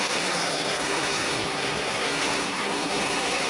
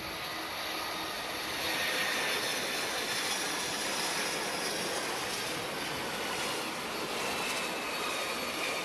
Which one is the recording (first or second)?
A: second